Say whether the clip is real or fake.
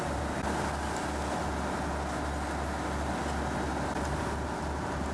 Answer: real